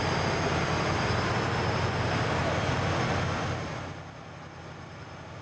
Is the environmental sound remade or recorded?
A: recorded